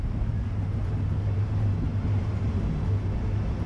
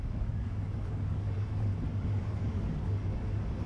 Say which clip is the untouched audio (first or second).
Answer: first